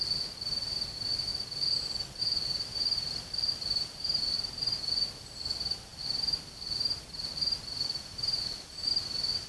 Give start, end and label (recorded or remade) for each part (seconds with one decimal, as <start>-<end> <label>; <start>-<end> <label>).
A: 0.0-1.3 remade; 1.3-2.2 recorded; 2.2-9.5 remade